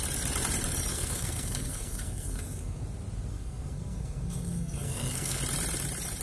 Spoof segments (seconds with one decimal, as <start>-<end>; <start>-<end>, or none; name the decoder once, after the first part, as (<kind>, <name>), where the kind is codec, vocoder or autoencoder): 0.9-2.8 (codec, SNAC); 3.3-5.4